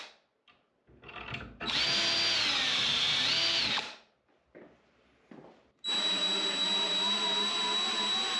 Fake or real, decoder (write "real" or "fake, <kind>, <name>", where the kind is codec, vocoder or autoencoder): real